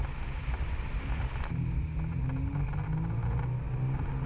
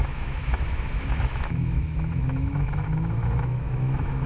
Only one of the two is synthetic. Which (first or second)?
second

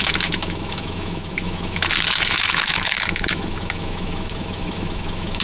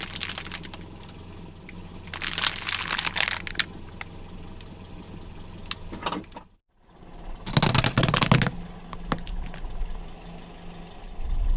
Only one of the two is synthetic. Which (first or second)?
first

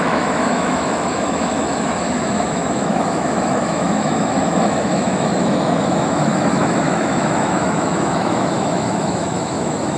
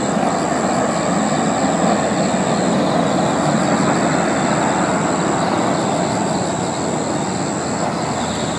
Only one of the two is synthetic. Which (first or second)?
first